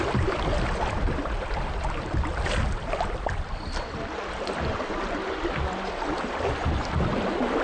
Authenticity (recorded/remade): recorded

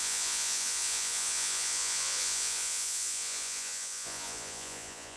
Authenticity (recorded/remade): remade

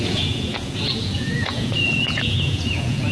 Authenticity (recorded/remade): remade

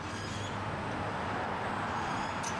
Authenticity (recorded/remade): recorded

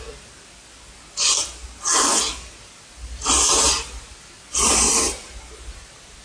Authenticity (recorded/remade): recorded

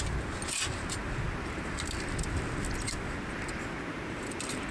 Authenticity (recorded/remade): recorded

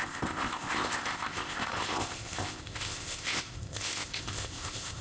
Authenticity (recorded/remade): remade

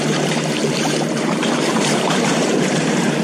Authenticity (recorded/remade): remade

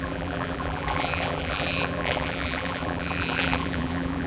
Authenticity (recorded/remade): remade